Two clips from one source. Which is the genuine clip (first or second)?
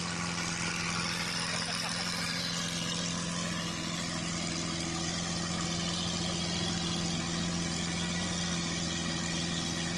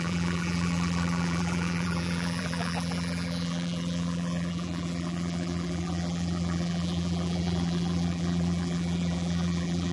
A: first